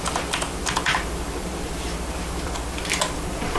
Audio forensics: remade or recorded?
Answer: remade